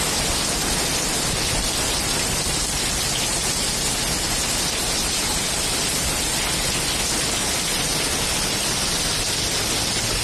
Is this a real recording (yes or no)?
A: yes